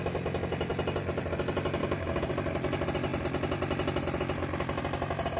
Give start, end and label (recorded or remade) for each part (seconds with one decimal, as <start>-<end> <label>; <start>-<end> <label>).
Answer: 0.0-1.8 recorded; 1.8-2.3 remade; 2.3-5.4 recorded